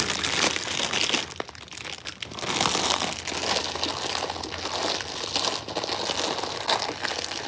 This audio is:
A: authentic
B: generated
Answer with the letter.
A